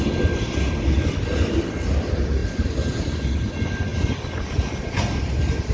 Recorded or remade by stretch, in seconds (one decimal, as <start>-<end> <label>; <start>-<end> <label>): 0.0-5.7 recorded